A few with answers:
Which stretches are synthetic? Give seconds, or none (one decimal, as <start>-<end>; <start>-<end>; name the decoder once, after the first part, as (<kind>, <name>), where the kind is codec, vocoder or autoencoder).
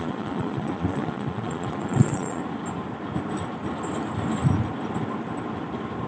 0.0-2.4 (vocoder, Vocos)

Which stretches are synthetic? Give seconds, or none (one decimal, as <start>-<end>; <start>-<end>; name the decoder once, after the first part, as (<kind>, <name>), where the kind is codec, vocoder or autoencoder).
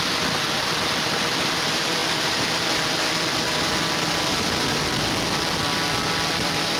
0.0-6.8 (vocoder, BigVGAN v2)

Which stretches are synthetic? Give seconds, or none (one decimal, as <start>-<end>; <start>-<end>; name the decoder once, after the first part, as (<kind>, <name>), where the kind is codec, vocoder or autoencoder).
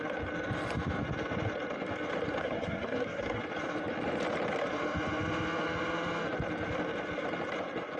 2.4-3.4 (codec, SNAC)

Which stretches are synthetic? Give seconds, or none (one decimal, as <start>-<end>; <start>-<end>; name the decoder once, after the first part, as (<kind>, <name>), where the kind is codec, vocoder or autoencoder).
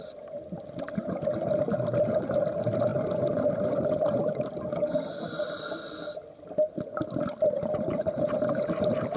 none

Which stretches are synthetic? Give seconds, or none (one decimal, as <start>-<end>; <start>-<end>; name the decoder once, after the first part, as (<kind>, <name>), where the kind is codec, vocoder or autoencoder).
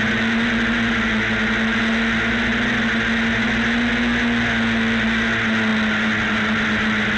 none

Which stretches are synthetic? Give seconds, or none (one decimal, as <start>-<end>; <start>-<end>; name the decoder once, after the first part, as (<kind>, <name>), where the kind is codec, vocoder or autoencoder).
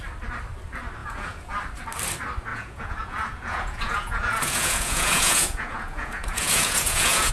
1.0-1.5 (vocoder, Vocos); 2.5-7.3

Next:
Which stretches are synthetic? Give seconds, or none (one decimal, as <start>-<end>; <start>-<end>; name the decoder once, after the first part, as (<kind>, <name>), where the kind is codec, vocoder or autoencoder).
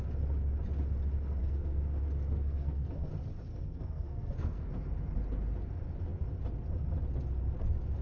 1.4-3.1 (codec, SNAC); 3.5-4.7